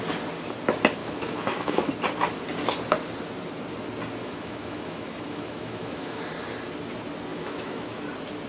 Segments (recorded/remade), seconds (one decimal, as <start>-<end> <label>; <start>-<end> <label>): 0.0-1.0 recorded; 1.0-1.9 remade; 1.9-4.2 recorded; 4.2-6.2 remade; 6.2-7.3 recorded; 7.3-8.0 remade; 8.0-8.5 recorded